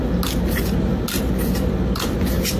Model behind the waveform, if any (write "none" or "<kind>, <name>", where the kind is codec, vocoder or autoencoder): none